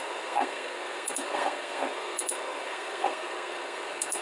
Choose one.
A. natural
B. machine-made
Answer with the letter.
B